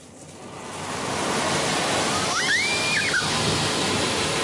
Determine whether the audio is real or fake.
real